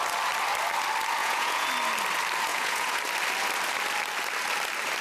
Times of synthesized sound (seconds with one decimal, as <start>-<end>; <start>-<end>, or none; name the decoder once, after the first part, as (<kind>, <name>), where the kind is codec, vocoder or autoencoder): 1.2-1.7 (vocoder, Vocos); 2.5-3.0

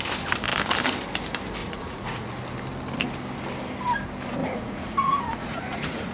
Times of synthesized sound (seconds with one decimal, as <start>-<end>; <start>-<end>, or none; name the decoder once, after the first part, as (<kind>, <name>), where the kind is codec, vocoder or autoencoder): 1.6-2.3 (vocoder, Vocos); 4.4-6.1

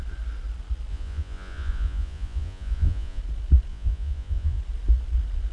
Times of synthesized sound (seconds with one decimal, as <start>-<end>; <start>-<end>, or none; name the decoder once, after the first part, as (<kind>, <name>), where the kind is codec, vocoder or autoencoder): 0.9-3.2 (vocoder, Vocos); 3.7-4.6

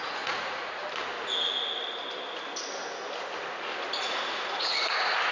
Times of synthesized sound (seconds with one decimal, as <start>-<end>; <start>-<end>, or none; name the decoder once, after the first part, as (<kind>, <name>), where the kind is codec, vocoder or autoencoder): 0.0-0.8 (vocoder, Vocos); 4.0-5.3

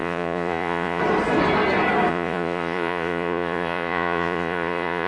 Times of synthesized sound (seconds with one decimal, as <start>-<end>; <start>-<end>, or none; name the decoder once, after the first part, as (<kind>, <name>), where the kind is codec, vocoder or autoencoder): 0.0-1.0 (vocoder, Vocos); 2.1-5.1

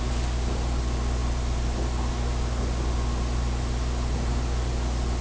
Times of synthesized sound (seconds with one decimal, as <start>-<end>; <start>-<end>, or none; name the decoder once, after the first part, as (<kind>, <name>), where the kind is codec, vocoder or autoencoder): none

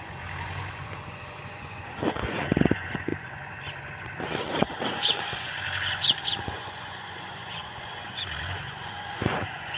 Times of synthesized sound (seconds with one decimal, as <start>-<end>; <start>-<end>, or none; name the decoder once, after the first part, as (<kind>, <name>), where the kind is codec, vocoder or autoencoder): 0.0-9.8 (vocoder, Vocos)

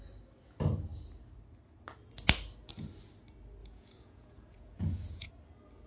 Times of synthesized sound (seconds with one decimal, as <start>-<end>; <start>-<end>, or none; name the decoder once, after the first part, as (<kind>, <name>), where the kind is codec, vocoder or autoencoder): 3.6-5.3 (vocoder, Vocos)